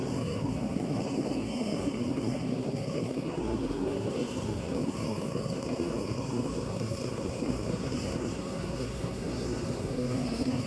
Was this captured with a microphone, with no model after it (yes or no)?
no